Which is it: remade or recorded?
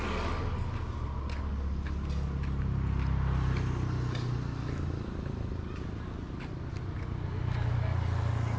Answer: recorded